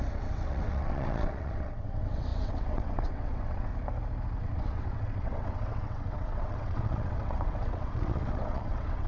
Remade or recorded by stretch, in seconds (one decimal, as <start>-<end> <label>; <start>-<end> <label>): 0.0-3.7 remade; 3.7-4.4 recorded; 4.4-9.1 remade